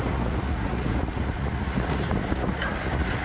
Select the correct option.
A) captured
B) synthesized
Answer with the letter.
B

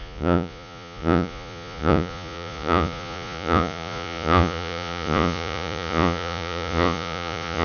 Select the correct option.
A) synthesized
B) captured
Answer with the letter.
A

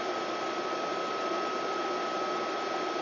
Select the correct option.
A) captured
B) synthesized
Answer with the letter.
A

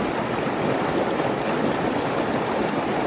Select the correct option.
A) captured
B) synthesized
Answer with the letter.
A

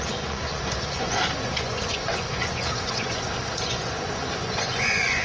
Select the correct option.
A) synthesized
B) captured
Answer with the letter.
A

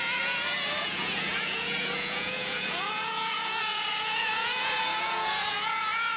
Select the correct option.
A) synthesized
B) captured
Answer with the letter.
A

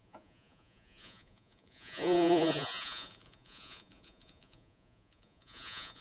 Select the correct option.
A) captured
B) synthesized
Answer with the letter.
B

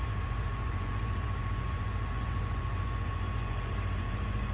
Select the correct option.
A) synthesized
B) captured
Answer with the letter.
A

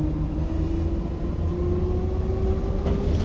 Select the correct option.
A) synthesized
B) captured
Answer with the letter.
B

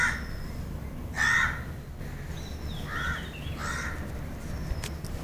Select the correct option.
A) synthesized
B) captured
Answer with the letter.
B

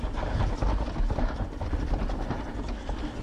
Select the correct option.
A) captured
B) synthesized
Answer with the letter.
A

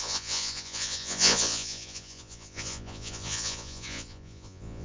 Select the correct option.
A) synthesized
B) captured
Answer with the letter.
A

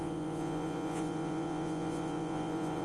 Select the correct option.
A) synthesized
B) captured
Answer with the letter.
A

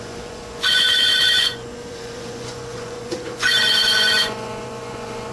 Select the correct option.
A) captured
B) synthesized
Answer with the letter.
B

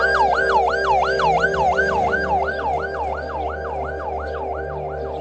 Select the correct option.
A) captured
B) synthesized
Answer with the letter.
A